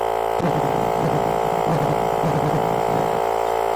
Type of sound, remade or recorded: recorded